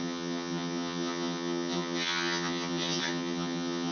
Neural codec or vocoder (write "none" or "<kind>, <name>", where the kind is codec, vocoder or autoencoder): vocoder, HiFi-GAN